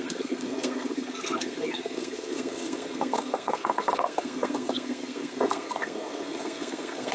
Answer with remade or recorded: remade